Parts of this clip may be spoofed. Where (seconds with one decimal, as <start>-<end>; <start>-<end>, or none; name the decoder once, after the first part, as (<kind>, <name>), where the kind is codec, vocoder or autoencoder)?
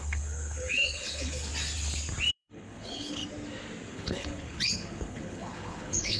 0.0-1.5 (codec, HILCodec); 2.3-3.2; 3.9-6.2